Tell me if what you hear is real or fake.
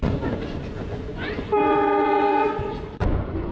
fake